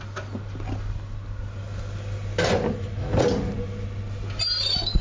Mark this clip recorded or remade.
recorded